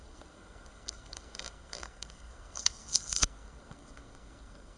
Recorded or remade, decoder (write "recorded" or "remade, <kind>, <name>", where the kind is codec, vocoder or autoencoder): remade, codec, SNAC